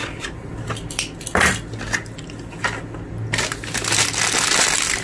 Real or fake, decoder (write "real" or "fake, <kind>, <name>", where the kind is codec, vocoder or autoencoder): real